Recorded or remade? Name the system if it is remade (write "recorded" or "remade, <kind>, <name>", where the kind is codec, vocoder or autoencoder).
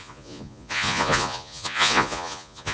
remade, vocoder, Vocos